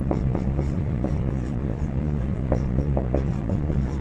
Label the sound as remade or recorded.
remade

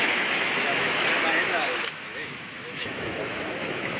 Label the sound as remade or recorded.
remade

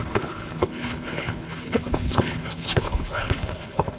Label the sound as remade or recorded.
remade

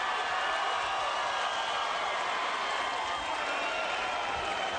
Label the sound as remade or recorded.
recorded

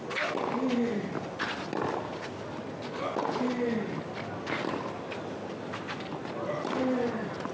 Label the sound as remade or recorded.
recorded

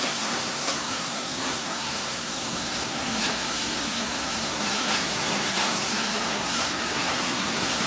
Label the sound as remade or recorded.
remade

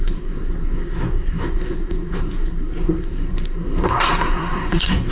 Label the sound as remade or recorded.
remade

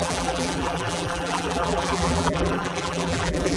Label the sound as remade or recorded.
remade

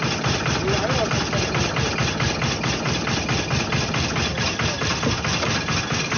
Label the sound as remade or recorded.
recorded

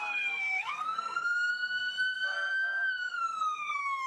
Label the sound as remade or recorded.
remade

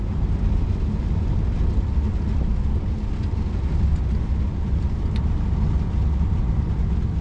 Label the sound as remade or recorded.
recorded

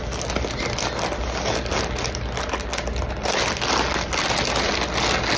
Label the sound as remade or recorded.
recorded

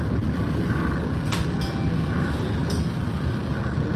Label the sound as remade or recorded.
recorded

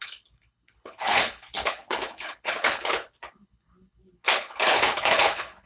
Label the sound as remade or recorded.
remade